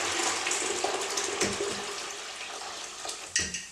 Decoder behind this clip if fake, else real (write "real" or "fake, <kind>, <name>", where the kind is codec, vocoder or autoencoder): real